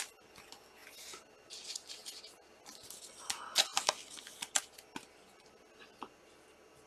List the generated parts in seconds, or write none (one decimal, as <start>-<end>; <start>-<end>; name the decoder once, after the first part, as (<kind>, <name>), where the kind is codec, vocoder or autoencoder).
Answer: none